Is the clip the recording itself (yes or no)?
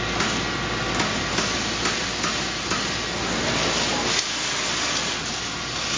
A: yes